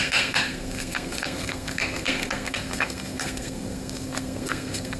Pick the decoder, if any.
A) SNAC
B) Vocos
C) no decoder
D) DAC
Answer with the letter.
A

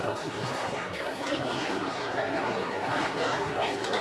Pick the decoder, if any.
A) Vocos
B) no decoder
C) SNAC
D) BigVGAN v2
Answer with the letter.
C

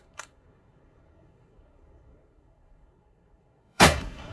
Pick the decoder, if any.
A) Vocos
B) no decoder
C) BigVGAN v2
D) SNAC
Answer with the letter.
D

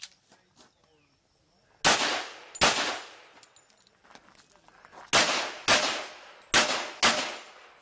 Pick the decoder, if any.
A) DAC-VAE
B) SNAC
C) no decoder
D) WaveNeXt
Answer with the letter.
C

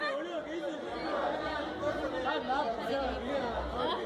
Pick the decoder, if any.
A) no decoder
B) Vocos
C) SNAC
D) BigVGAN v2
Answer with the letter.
A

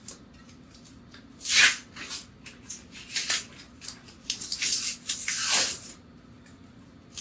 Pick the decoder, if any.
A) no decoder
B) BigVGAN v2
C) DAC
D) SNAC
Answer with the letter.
A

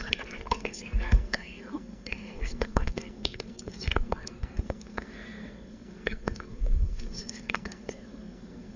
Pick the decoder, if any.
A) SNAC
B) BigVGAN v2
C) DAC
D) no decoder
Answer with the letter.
A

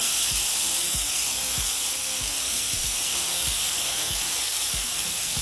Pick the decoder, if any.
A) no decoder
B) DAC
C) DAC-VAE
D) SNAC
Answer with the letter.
D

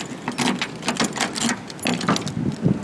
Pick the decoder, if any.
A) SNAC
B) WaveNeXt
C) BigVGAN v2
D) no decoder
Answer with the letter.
D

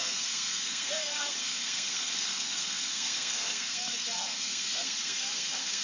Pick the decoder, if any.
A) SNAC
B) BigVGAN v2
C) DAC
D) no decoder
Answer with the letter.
A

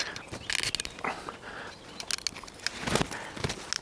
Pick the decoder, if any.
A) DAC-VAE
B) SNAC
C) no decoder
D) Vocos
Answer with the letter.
C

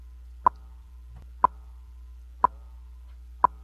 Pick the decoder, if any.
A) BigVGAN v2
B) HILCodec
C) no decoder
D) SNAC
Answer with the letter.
C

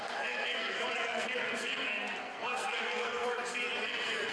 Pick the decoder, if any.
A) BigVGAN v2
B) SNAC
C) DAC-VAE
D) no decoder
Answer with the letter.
B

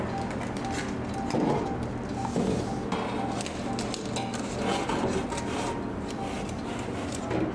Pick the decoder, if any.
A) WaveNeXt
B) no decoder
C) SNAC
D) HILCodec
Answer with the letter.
B